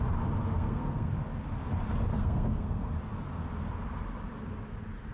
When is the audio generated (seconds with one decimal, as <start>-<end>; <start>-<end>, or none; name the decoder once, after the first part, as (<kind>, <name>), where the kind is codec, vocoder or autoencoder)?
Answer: 0.4-1.1 (codec, SNAC); 2.1-3.0

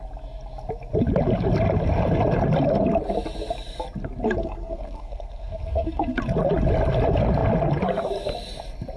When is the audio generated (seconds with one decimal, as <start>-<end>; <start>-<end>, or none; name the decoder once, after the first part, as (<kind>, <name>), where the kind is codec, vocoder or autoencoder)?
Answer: 4.4-6.2 (codec, SNAC)

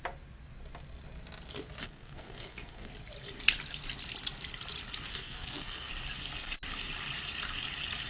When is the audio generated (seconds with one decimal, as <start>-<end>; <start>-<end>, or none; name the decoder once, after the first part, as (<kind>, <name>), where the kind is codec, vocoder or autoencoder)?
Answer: 1.8-2.9 (codec, SNAC); 5.1-5.9